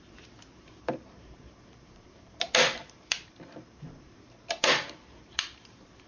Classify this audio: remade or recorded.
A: remade